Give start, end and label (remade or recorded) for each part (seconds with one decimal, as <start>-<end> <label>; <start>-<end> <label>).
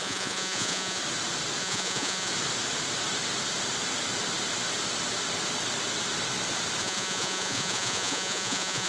0.0-1.0 remade; 1.0-1.6 recorded; 1.6-2.3 remade; 2.3-6.8 recorded; 6.8-8.9 remade